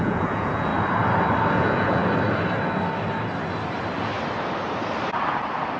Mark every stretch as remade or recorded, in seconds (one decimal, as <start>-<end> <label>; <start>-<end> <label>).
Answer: 0.0-0.7 remade; 0.7-1.5 recorded; 1.5-2.0 remade; 2.0-5.8 recorded

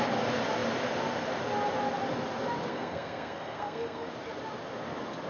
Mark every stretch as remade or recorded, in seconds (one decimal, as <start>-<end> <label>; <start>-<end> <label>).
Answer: 0.0-2.7 recorded; 2.7-4.1 remade; 4.1-5.3 recorded

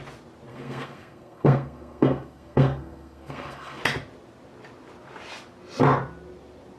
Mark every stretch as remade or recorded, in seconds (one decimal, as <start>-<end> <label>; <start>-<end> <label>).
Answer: 0.0-0.5 recorded; 0.5-3.8 remade; 3.8-6.8 recorded

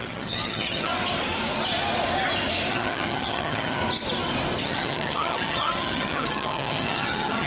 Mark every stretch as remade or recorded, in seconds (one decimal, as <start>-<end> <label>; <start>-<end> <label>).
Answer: 0.0-0.9 remade; 0.9-2.7 recorded; 2.7-3.8 remade; 3.8-4.6 recorded; 4.6-7.5 remade

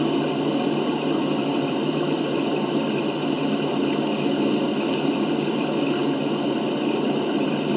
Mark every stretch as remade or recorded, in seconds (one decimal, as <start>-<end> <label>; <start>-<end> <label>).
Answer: 0.0-7.8 recorded

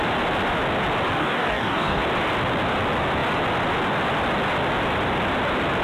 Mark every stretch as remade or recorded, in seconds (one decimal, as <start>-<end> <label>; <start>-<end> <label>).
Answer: 0.0-1.2 recorded; 1.2-2.0 remade; 2.0-5.8 recorded